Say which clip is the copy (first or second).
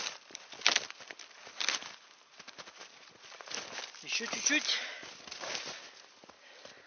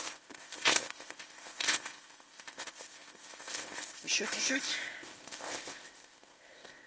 second